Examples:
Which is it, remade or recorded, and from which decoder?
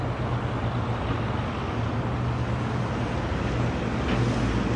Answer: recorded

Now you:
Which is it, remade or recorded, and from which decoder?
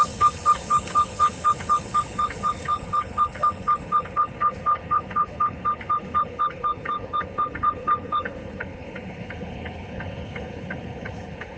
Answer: remade, codec, HILCodec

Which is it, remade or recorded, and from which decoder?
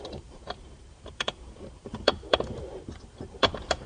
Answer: remade, vocoder, BigVGAN v2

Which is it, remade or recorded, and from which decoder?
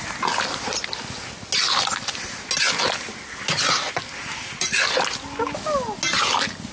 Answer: recorded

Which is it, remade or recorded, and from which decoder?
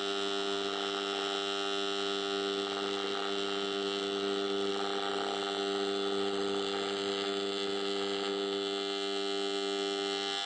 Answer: recorded